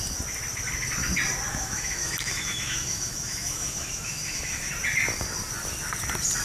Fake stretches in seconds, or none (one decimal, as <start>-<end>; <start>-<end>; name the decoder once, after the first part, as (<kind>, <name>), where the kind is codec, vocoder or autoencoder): 1.5-4.7 (autoencoder, DAC-VAE)